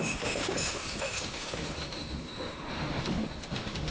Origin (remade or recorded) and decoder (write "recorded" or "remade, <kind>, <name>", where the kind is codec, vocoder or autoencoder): remade, autoencoder, DAC-VAE